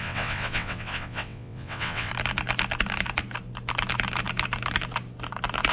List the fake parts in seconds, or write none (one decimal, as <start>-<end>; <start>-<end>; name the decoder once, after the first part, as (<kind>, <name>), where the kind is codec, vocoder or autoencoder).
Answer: 0.0-2.1 (vocoder, WaveNeXt)